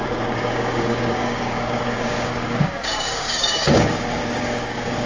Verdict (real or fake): fake